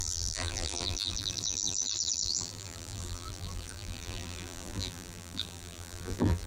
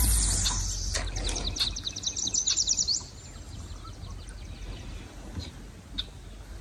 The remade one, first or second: first